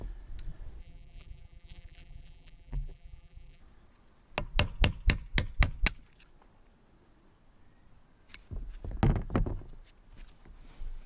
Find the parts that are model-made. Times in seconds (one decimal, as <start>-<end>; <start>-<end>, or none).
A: 0.8-3.6